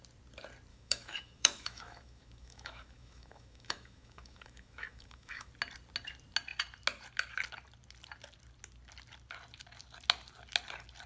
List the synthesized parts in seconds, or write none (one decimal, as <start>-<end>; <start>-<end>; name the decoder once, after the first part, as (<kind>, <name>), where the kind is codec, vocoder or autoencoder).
0.7-5.5 (autoencoder, DAC-VAE)